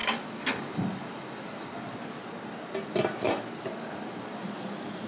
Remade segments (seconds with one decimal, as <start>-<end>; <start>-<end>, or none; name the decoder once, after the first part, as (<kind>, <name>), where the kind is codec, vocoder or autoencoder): 0.6-2.2 (vocoder, BigVGAN v2); 3.2-5.1